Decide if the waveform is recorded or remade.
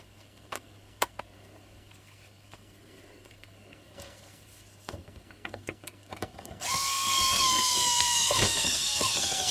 remade